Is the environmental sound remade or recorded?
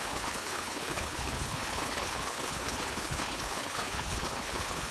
remade